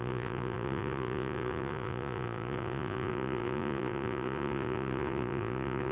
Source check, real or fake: fake